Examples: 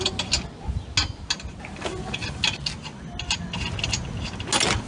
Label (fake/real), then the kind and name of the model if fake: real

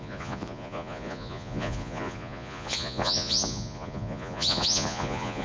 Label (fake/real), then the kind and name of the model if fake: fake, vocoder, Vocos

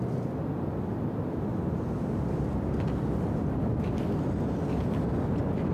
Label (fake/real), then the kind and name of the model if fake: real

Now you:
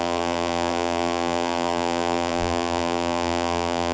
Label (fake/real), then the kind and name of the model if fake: fake, vocoder, BigVGAN v2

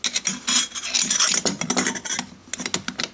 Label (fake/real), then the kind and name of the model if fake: real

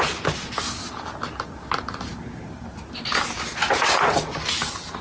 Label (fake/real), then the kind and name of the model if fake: real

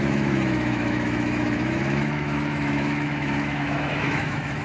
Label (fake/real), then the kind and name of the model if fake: fake, autoencoder, DAC-VAE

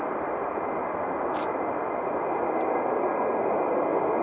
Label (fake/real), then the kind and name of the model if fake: real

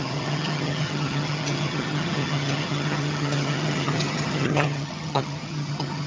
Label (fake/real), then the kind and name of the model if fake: fake, vocoder, HiFi-GAN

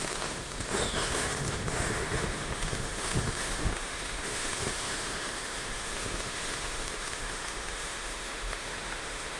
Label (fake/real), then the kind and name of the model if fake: fake, autoencoder, DAC-VAE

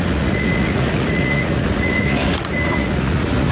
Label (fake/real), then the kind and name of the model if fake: fake, vocoder, Vocos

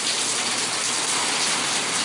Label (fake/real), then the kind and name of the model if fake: real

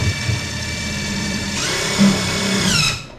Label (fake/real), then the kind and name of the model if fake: fake, vocoder, BigVGAN v2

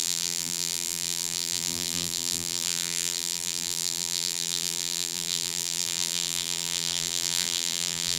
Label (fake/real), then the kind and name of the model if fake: fake, vocoder, BigVGAN v2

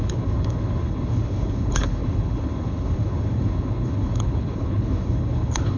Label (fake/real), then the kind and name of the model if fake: fake, codec, HILCodec